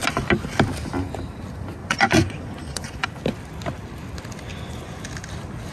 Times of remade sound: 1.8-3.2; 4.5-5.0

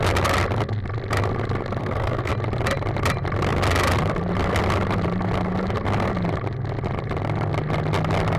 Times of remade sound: 1.8-2.3

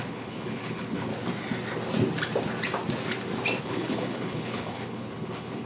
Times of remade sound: 0.0-1.1; 3.6-5.7

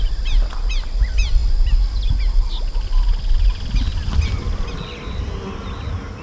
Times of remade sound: none

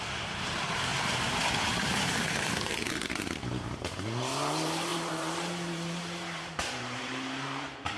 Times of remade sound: 0.0-8.0

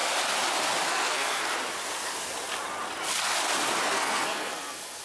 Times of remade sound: 0.9-1.4; 3.8-5.0

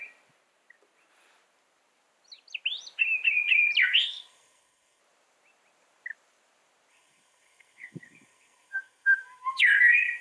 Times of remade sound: 3.8-5.0; 6.9-10.2

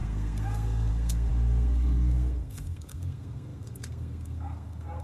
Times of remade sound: 0.0-5.0